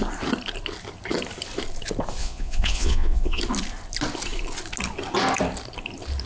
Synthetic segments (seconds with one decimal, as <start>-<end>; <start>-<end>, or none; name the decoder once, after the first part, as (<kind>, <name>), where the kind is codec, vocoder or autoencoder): 2.2-3.4 (vocoder, Vocos)